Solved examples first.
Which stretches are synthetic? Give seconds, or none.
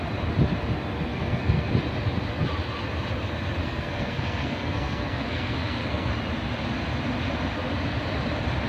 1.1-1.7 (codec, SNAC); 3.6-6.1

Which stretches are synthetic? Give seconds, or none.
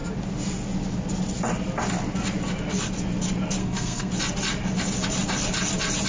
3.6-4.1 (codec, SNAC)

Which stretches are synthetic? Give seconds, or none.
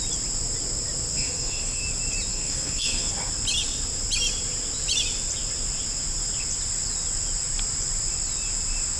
1.1-1.8 (codec, SNAC); 2.3-3.1